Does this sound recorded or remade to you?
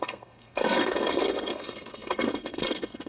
remade